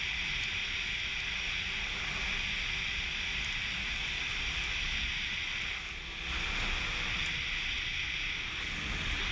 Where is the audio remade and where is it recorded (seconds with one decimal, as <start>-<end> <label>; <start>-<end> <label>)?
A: 0.0-9.3 recorded